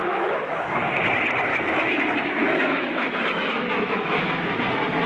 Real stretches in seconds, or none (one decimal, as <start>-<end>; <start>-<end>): 1.0-1.5; 4.6-5.1